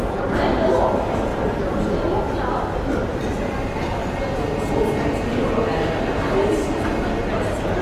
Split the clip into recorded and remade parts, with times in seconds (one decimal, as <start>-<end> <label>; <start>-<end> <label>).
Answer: 0.0-1.3 recorded; 1.3-2.0 remade; 2.0-7.8 recorded